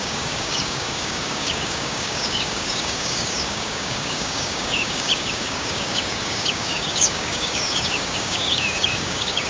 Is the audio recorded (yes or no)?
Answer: no